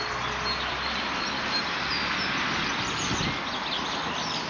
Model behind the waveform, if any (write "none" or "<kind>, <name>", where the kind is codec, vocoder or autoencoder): none